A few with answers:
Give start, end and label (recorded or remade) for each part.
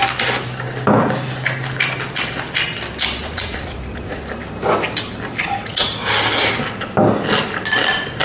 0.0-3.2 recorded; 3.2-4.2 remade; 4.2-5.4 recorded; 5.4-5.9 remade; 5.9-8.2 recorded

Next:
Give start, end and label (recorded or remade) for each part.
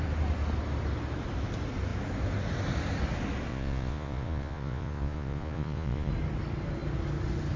0.0-3.5 recorded; 3.5-6.1 remade; 6.1-7.6 recorded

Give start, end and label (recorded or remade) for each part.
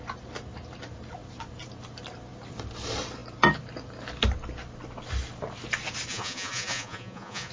0.0-6.1 recorded; 6.1-7.5 remade